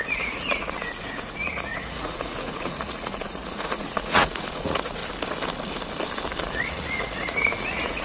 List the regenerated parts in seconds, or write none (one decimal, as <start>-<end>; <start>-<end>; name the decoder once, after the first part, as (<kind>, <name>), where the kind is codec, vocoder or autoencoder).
0.0-5.0 (vocoder, Vocos); 6.4-8.0